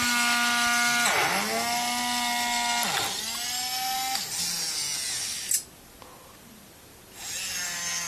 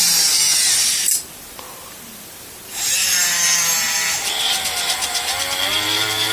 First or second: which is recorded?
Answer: first